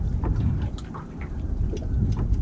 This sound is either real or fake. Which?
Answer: real